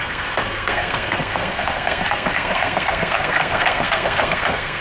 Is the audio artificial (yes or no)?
yes